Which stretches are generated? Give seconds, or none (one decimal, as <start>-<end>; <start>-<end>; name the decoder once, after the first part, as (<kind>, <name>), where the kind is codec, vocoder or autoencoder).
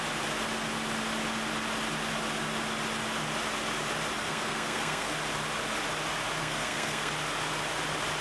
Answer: 4.2-5.1 (codec, SNAC); 6.4-7.1